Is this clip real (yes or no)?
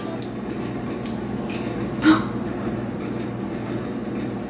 yes